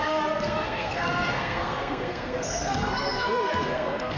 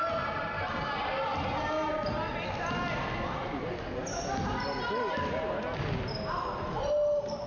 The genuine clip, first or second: second